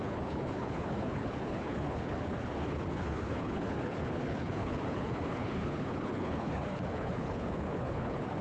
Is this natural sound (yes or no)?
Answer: no